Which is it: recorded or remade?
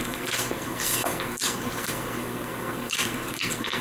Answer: remade